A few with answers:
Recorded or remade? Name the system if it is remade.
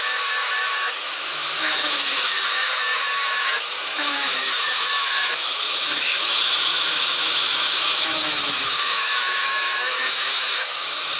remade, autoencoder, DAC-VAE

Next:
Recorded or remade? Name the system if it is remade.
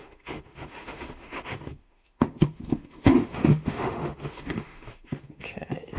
remade, autoencoder, DAC-VAE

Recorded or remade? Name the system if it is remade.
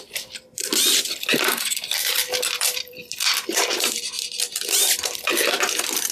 remade, vocoder, BigVGAN v2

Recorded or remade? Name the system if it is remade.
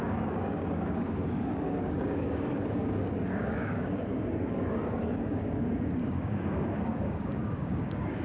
remade, codec, DAC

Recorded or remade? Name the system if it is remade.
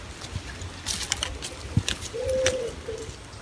recorded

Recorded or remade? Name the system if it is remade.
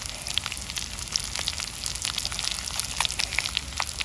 recorded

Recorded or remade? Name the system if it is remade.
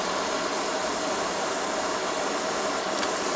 recorded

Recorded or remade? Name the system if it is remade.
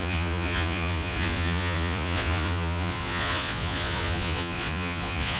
remade, vocoder, Vocos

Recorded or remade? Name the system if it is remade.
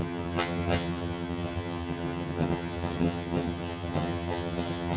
remade, vocoder, HiFi-GAN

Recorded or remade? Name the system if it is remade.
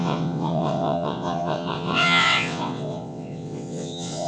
remade, vocoder, WaveNeXt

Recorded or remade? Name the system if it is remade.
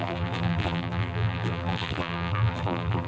remade, vocoder, BigVGAN v2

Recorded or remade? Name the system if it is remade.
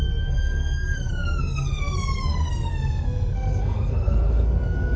remade, codec, SNAC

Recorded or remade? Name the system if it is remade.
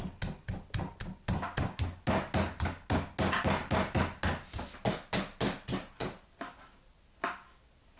recorded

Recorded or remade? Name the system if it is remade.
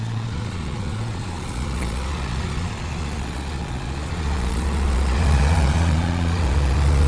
remade, vocoder, Vocos